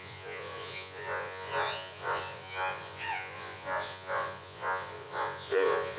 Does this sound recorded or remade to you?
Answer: remade